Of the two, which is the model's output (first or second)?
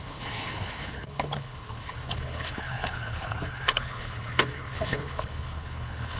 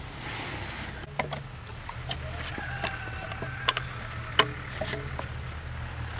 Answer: first